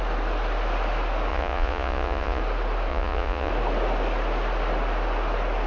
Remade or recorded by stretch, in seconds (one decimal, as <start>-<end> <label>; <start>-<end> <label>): 0.0-1.3 recorded; 1.3-2.4 remade; 2.4-2.9 recorded; 2.9-3.5 remade; 3.5-5.7 recorded